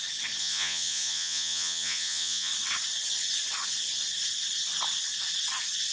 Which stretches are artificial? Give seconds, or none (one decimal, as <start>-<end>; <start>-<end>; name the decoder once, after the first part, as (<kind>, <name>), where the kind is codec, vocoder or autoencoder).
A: 0.4-2.5 (vocoder, Vocos)